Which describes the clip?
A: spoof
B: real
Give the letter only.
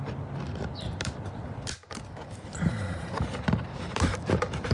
A